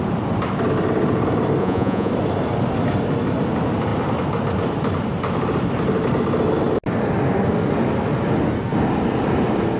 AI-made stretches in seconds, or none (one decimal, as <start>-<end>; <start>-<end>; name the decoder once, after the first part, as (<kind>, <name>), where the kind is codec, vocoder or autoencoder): 1.6-2.1 (vocoder, Vocos)